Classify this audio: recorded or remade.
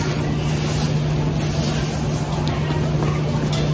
recorded